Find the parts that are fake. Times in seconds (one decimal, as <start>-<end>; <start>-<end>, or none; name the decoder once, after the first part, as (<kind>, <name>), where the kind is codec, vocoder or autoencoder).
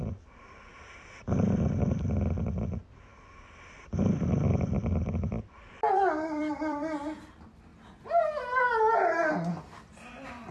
0.7-1.5 (vocoder, BigVGAN v2); 3.1-7.3